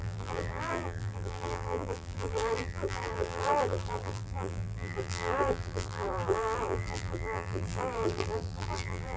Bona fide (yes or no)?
no